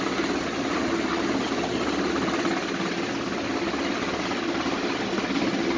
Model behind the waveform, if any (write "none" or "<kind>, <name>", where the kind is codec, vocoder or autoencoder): none